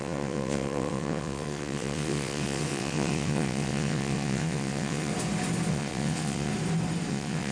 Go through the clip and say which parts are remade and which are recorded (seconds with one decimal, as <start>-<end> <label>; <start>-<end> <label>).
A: 0.0-5.1 remade; 5.1-5.7 recorded; 5.7-6.5 remade; 6.5-7.1 recorded; 7.1-7.5 remade